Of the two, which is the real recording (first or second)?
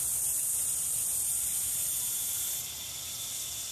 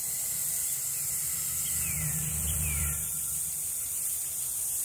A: first